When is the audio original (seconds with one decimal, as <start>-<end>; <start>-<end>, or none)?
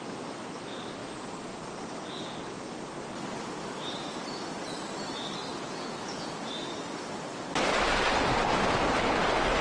0.0-5.5; 6.6-9.6